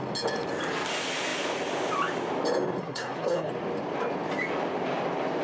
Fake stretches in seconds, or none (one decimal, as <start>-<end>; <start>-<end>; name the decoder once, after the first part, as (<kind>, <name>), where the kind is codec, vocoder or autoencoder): 2.8-3.5 (codec, SNAC)